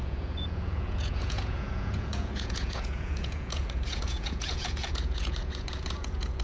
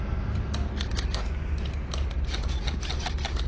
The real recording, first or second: second